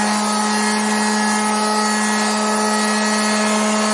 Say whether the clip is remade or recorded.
recorded